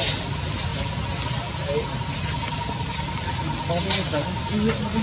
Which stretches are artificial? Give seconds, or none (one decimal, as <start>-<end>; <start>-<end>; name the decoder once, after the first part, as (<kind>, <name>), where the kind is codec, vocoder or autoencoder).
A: none